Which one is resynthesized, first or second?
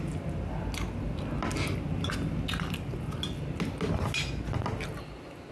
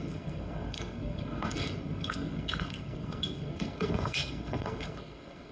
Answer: second